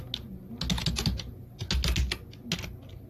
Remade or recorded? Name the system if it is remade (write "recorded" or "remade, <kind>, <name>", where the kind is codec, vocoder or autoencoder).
recorded